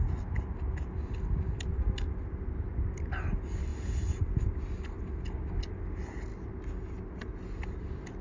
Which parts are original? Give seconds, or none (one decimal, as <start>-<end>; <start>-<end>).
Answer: 0.0-3.7; 4.2-8.2